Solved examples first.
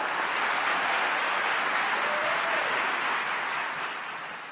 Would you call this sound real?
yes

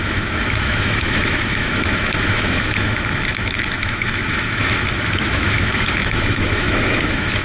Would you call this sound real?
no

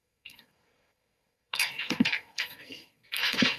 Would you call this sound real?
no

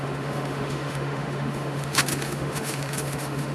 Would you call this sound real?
no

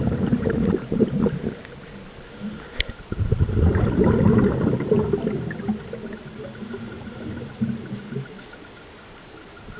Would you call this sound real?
yes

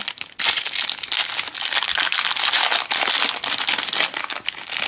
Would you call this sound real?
yes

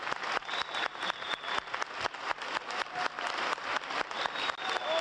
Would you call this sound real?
yes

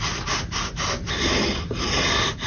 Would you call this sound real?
yes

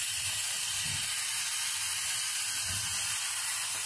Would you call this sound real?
yes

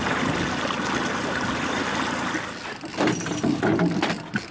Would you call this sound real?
yes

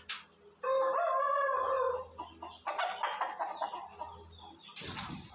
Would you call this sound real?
yes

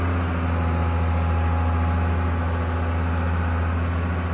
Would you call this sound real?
yes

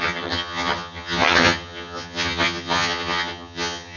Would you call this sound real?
no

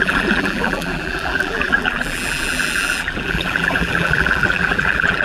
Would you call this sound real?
no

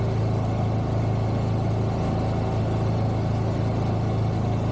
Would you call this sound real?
yes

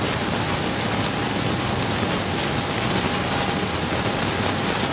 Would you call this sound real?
yes